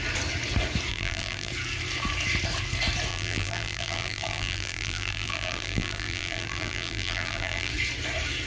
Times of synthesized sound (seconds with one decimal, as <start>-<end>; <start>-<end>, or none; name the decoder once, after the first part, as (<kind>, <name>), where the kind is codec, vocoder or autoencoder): 0.9-1.5 (vocoder, BigVGAN v2); 3.1-7.7